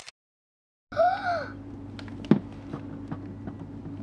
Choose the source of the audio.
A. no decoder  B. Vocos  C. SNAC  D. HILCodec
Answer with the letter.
A